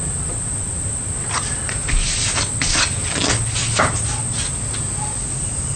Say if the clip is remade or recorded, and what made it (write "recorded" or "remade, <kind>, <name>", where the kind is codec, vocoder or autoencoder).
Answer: recorded